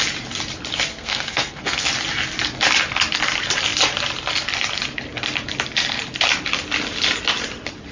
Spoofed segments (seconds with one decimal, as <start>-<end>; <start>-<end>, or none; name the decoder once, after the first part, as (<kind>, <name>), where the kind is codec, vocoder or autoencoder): 0.9-1.9 (codec, SNAC)